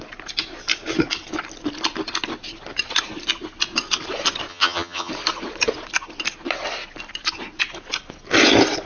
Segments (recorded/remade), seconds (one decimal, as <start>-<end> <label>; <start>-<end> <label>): 0.0-4.5 recorded; 4.5-5.1 remade; 5.1-8.9 recorded